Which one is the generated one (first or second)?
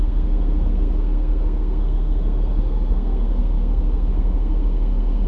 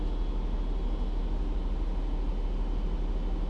first